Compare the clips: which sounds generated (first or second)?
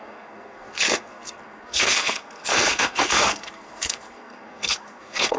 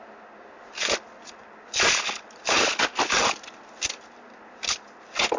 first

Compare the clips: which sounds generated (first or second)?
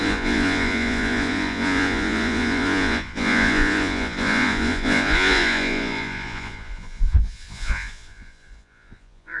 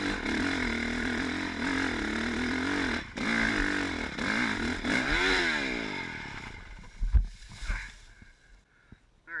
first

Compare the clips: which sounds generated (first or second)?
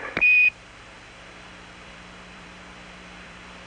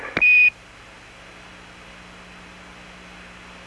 first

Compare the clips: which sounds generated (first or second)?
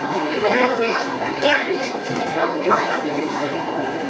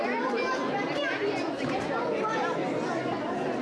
first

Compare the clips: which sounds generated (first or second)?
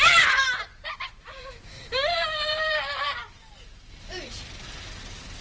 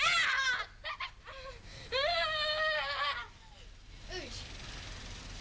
first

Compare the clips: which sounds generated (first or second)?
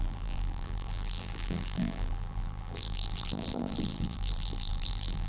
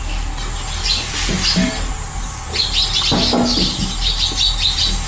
first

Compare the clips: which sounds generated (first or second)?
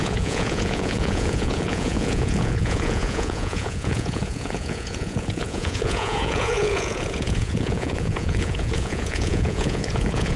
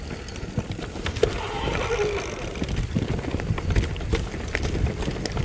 first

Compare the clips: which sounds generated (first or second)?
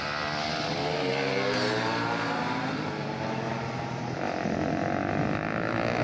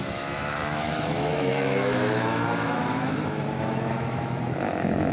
second